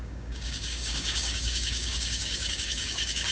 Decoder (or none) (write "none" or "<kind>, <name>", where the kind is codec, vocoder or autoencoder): codec, DAC